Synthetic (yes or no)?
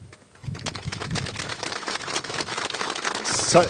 yes